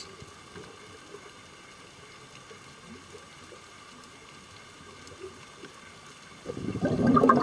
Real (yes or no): yes